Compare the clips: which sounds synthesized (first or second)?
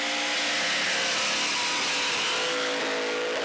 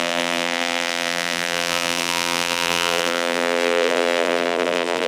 second